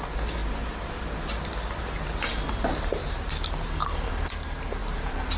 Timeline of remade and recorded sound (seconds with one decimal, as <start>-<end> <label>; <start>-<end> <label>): 0.0-0.4 recorded; 0.4-1.1 remade; 1.1-3.0 recorded; 3.0-4.1 remade; 4.1-4.8 recorded; 4.8-5.4 remade